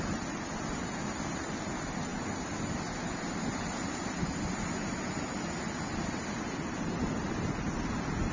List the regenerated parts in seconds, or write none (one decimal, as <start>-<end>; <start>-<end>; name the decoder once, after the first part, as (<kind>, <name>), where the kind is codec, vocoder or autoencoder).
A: none